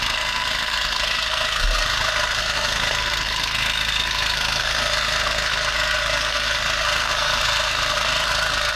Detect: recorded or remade remade